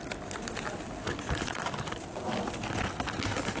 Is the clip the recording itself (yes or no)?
yes